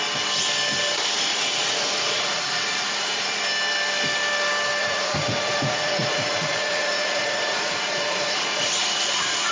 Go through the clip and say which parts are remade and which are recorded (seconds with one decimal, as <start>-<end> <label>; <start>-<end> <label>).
0.0-1.3 recorded; 1.3-3.4 remade; 3.4-4.8 recorded; 4.8-9.5 remade